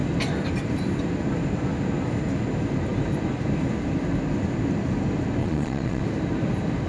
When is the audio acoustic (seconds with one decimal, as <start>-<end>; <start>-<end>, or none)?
0.0-5.4; 6.0-6.9